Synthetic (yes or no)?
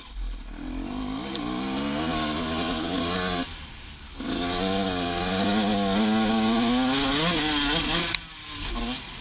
no